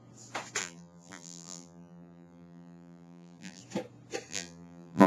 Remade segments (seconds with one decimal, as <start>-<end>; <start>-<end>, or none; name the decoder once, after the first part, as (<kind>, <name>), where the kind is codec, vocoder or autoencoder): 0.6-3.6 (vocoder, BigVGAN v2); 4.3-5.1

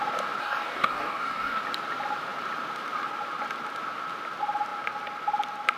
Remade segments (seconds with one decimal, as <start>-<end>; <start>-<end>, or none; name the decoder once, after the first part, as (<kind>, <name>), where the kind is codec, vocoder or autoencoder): 0.4-1.6 (codec, DAC)

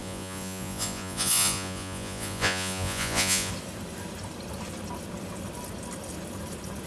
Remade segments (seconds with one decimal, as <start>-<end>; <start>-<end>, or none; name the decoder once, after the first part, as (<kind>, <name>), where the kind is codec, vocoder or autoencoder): 0.0-3.5 (vocoder, Vocos)